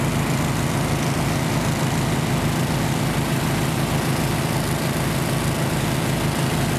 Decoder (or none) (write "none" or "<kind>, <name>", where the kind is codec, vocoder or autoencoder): none